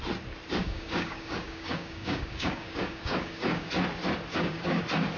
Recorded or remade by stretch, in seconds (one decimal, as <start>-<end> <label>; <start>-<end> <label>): 0.0-0.6 recorded; 0.6-3.7 remade; 3.7-4.3 recorded; 4.3-4.8 remade; 4.8-5.2 recorded